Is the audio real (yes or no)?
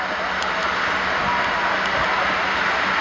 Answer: yes